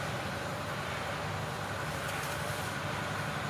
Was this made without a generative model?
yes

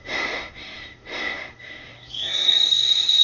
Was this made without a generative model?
no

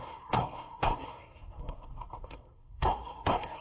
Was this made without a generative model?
no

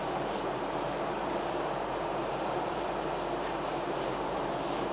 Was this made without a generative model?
no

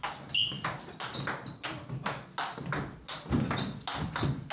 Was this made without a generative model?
yes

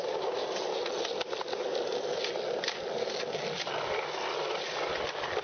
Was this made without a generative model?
yes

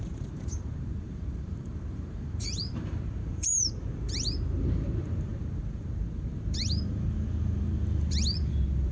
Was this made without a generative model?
no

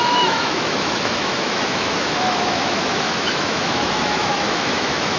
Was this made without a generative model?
no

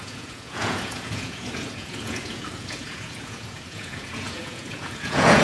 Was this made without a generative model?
no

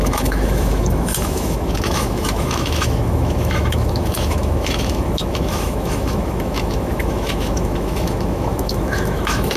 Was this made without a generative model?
no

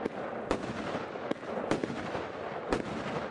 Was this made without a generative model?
yes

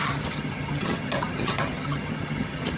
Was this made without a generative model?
no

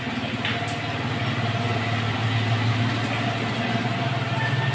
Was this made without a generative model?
yes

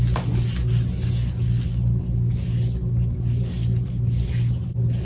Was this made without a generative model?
yes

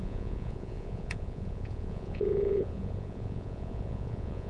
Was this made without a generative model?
no